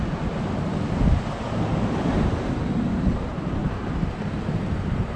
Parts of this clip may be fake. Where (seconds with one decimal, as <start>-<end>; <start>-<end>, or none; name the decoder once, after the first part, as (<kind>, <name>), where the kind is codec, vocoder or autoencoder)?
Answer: 0.0-1.7 (vocoder, BigVGAN v2); 3.1-3.6; 4.2-5.2